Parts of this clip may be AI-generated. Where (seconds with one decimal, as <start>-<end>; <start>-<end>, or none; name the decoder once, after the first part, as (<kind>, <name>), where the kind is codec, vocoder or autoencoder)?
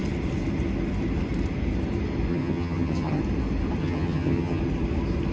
2.3-3.2 (vocoder, HiFi-GAN); 3.8-4.6